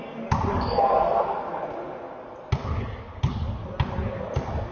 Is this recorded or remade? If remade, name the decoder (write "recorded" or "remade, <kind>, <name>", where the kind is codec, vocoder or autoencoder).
recorded